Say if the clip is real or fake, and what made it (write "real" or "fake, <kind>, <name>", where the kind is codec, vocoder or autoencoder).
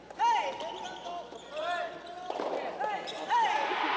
real